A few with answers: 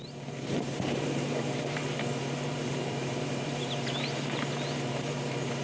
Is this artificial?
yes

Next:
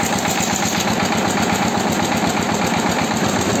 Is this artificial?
no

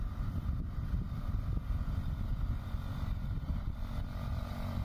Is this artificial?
no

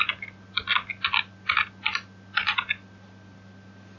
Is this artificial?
no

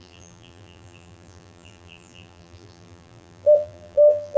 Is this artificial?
yes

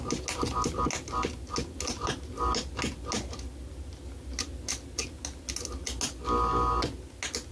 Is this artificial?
no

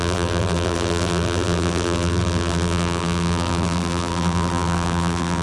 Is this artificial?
yes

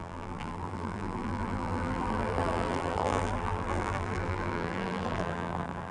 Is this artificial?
yes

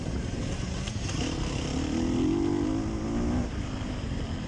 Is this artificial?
no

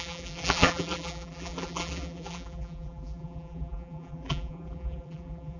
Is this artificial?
yes